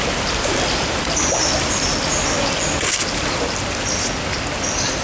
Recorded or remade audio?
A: recorded